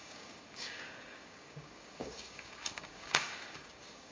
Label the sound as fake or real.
fake